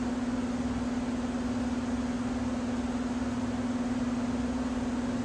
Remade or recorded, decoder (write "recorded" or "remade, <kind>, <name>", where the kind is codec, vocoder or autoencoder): recorded